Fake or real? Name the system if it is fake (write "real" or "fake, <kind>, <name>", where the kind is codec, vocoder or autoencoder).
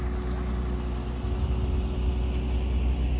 real